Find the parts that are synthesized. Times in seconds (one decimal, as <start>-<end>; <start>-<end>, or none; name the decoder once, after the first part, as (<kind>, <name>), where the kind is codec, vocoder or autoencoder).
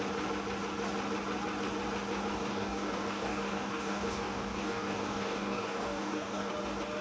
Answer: 2.3-6.5 (codec, DAC)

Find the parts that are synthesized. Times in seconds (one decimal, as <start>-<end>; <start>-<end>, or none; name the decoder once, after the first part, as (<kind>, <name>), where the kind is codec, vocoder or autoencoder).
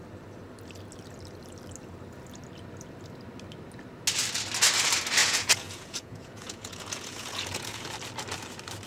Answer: 5.2-7.8 (vocoder, Vocos)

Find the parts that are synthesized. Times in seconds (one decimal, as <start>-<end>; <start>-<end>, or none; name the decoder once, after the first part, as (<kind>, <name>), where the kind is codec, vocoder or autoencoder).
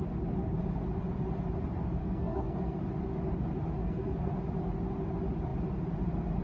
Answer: 2.0-2.8 (codec, SNAC); 3.8-4.3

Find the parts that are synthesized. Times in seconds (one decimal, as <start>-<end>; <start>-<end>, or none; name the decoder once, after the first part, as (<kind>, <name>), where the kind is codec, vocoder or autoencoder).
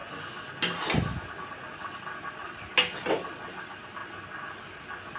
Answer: none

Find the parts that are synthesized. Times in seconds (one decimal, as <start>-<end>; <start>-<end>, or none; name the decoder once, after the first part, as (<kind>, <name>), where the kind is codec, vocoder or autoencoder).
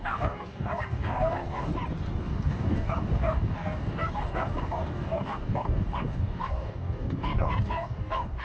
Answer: 0.0-1.7 (codec, DAC); 2.2-8.4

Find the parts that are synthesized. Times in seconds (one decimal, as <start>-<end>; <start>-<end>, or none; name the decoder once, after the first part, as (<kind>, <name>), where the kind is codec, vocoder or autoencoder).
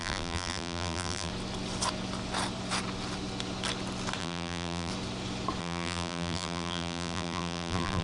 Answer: 0.0-1.3 (vocoder, BigVGAN v2); 4.2-4.9; 5.6-8.0